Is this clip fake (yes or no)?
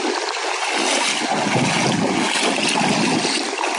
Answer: no